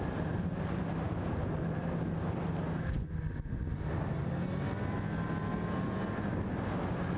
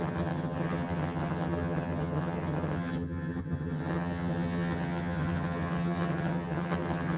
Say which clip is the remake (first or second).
second